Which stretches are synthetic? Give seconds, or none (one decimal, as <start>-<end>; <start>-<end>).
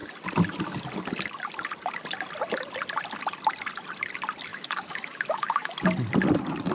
4.5-5.8